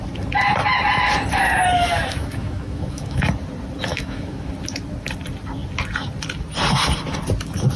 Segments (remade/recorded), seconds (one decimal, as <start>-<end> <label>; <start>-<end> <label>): 0.0-2.2 recorded; 2.2-3.2 remade; 3.2-3.9 recorded; 3.9-4.5 remade; 4.5-7.8 recorded